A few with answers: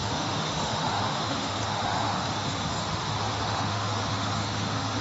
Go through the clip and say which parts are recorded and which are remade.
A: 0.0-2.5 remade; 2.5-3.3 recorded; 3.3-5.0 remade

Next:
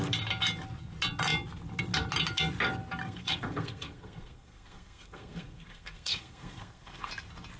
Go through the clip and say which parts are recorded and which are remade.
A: 0.0-3.0 recorded; 3.0-7.1 remade; 7.1-7.6 recorded

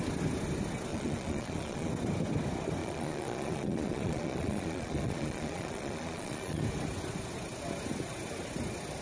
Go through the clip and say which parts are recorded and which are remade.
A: 0.0-0.9 recorded; 0.9-1.9 remade; 1.9-2.8 recorded; 2.8-6.6 remade; 6.6-9.0 recorded

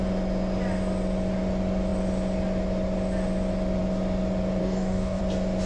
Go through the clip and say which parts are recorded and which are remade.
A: 0.0-4.6 recorded; 4.6-5.2 remade; 5.2-5.7 recorded

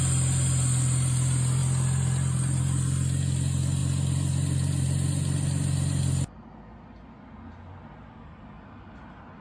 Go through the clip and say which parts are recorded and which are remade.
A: 0.0-9.4 recorded

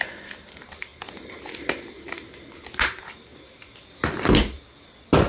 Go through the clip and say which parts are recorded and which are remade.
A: 0.0-3.3 remade; 3.3-5.3 recorded